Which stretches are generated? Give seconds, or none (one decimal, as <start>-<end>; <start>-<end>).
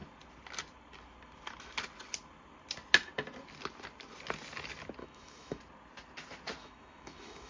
5.0-5.6; 6.6-7.5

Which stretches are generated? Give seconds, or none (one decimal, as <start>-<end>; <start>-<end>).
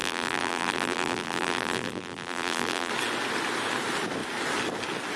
0.0-2.9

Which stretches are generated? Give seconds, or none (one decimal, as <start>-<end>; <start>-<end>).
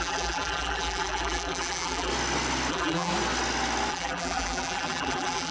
0.0-2.1; 2.7-3.1; 3.9-5.5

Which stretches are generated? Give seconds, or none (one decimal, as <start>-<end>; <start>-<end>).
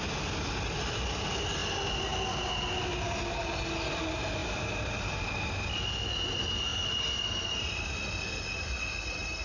none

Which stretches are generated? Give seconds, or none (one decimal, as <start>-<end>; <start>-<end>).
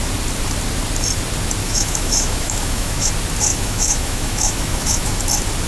1.6-3.1; 3.5-5.2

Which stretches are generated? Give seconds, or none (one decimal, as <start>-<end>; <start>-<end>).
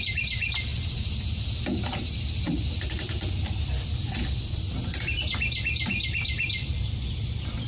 none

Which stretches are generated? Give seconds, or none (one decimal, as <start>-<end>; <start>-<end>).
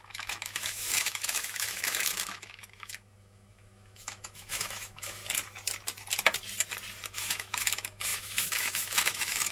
0.0-5.2; 7.1-9.5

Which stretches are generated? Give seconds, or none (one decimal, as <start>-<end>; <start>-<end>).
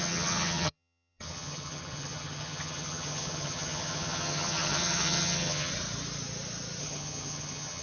0.0-5.7; 6.8-7.8